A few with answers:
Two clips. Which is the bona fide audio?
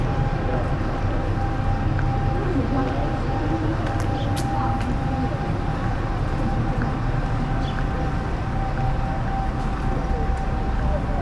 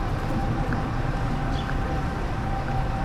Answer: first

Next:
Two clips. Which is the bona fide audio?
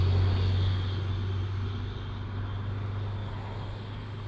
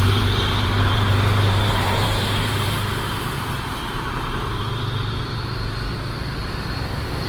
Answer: first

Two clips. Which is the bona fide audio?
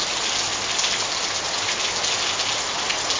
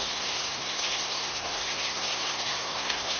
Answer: first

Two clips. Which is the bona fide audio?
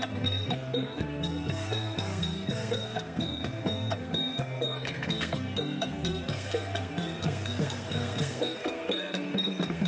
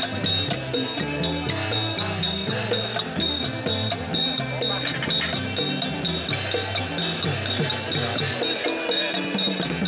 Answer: second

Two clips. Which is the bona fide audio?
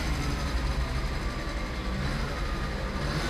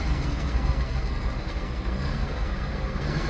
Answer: first